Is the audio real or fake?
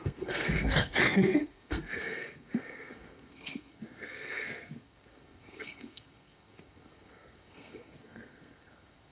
fake